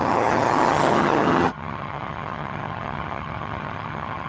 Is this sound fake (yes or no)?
yes